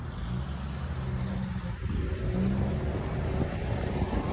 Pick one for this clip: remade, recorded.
recorded